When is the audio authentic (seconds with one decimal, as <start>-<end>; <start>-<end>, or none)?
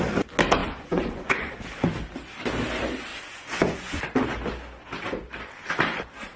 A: 0.0-0.6; 1.6-3.1; 4.0-6.4